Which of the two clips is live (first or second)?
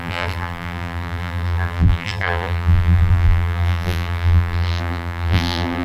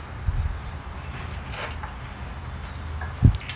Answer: second